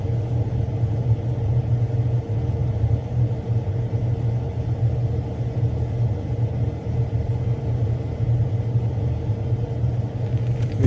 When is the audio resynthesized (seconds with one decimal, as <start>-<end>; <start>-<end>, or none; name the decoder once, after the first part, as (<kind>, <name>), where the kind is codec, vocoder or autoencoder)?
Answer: none